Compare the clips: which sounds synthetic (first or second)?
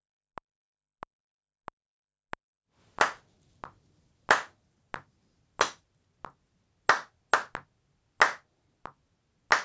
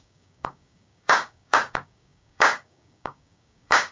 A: second